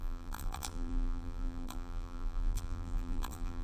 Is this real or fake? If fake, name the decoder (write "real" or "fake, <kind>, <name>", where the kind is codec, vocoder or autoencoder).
fake, vocoder, BigVGAN v2